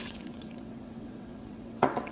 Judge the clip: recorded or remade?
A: remade